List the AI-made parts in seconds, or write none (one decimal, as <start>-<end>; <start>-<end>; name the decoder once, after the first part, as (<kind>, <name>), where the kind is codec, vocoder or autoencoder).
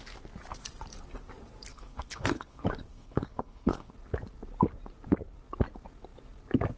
1.7-3.9 (codec, HILCodec)